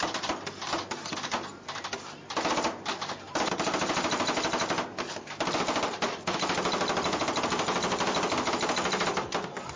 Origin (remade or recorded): recorded